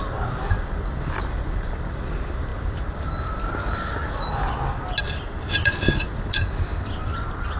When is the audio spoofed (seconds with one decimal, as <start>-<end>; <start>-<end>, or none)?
none